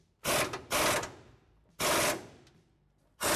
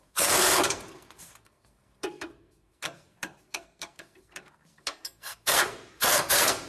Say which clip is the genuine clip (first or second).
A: first